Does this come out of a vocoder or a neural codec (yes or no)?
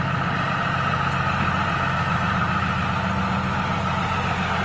no